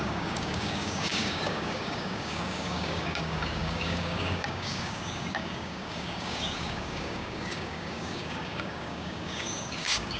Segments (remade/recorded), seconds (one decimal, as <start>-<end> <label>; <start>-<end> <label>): 0.0-10.2 remade